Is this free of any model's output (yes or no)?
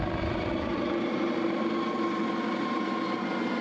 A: yes